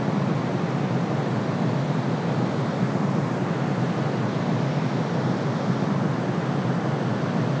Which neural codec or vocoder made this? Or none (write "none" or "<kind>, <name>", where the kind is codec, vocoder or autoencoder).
none